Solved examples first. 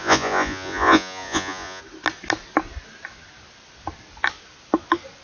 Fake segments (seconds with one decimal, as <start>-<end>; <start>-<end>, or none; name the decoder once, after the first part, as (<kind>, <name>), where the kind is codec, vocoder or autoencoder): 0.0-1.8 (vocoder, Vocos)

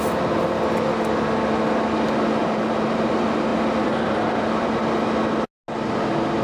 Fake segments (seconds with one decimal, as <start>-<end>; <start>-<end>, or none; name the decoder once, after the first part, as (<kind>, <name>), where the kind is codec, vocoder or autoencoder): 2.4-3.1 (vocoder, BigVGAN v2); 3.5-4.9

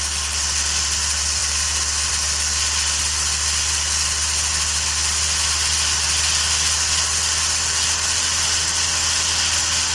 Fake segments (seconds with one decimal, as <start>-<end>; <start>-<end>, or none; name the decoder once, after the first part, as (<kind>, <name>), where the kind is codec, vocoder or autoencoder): none

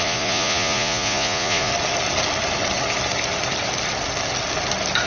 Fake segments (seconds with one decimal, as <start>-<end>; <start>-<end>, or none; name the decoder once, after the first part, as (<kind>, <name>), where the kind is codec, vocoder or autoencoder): 0.0-1.7 (vocoder, Vocos)

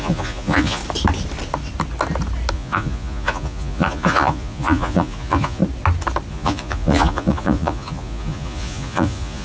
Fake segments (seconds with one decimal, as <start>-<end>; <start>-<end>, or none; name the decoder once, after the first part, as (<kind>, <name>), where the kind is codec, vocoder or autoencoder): 0.0-0.8 (vocoder, Vocos); 2.5-5.6; 6.3-9.4

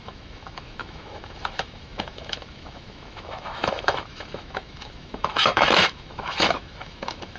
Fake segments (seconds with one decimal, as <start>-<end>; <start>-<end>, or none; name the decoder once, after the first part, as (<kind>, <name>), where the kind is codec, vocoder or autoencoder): 0.0-7.4 (autoencoder, DAC-VAE)